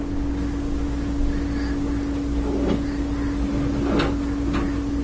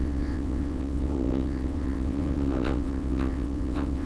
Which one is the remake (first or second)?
second